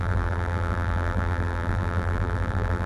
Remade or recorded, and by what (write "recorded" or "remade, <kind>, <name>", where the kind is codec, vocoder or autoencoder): remade, vocoder, BigVGAN v2